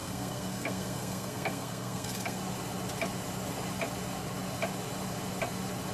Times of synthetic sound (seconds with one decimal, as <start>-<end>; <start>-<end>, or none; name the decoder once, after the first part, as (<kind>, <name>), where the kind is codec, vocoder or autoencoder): 0.0-2.4 (codec, SNAC)